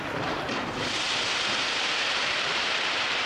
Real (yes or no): no